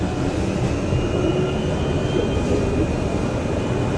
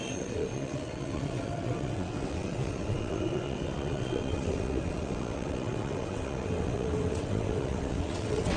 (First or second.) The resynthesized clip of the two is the second